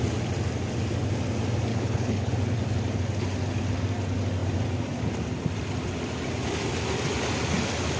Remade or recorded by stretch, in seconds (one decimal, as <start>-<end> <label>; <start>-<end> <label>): 0.0-1.7 recorded; 1.7-2.3 remade; 2.3-8.0 recorded